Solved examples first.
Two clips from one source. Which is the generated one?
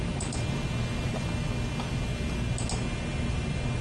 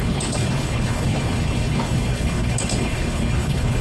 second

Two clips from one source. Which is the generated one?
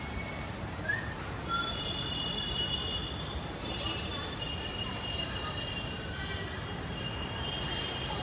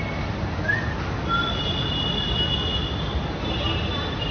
first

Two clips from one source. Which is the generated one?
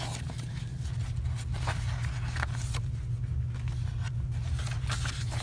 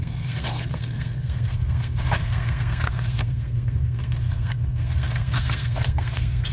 second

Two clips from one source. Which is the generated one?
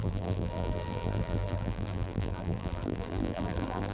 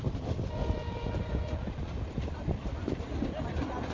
first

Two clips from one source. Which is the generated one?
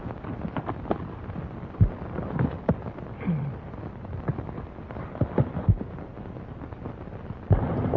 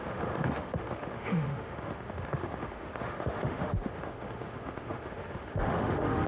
second